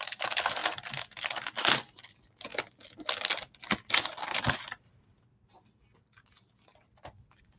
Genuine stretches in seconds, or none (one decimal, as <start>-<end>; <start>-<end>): 0.0-7.6